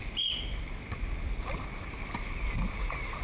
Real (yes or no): yes